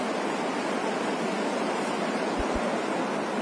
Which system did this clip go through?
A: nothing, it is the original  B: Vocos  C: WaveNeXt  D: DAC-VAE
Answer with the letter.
A